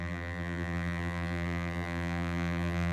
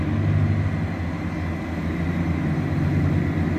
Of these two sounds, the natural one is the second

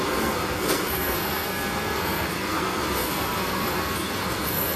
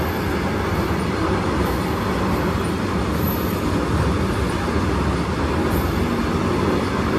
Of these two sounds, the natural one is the second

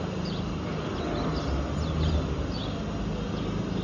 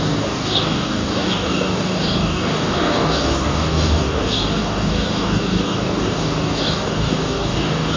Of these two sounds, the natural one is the first